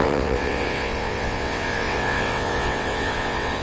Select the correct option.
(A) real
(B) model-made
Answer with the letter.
B